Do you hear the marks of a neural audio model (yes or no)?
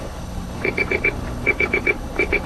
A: yes